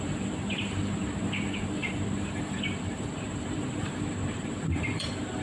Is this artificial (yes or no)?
yes